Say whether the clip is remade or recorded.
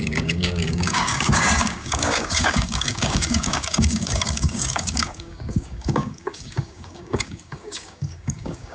remade